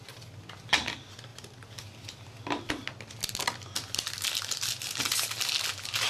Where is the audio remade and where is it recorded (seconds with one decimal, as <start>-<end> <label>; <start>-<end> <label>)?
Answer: 0.0-6.1 recorded